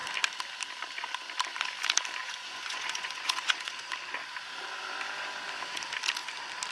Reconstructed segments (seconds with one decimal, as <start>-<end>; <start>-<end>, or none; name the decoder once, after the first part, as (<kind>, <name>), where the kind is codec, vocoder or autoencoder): 2.2-3.8 (vocoder, Vocos)